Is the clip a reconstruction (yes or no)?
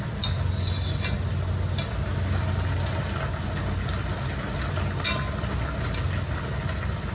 no